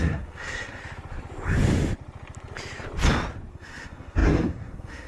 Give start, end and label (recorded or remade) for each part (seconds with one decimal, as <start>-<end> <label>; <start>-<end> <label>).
0.0-0.8 remade; 0.8-3.5 recorded; 3.5-5.1 remade